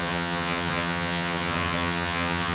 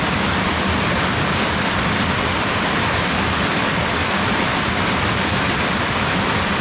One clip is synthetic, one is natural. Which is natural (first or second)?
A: second